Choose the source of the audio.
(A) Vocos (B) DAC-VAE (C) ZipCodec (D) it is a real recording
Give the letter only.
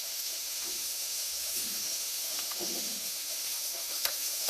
B